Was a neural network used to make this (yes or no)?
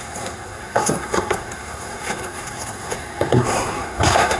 yes